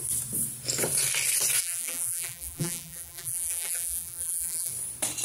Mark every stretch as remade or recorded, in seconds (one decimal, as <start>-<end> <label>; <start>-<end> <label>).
0.0-1.6 recorded; 1.6-4.7 remade; 4.7-5.2 recorded